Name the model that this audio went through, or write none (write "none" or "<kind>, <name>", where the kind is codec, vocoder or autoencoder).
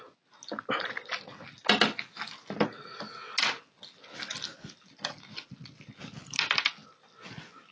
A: none